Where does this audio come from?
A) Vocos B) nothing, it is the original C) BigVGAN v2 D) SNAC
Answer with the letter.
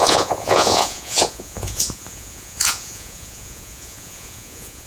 A